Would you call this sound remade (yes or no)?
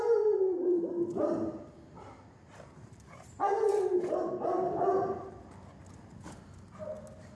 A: no